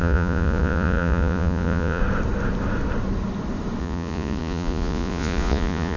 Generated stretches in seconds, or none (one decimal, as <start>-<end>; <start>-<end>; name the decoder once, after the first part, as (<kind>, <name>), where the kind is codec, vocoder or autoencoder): 0.0-2.0 (vocoder, Vocos); 3.8-6.0